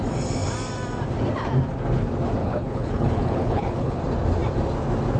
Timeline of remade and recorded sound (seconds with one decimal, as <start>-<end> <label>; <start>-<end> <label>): 0.0-2.4 recorded; 2.4-4.0 remade; 4.0-5.2 recorded